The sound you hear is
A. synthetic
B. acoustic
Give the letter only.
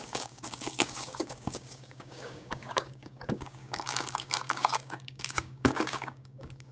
A